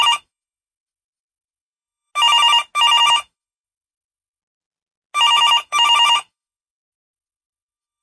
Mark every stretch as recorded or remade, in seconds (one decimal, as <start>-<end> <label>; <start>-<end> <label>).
0.0-2.1 remade; 2.1-3.0 recorded; 3.0-4.4 remade; 4.4-5.3 recorded; 5.3-8.0 remade